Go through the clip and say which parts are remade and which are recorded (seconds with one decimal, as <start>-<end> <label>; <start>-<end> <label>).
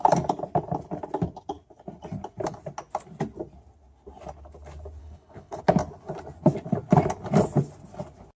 0.0-5.0 recorded; 5.0-5.6 remade; 5.6-8.4 recorded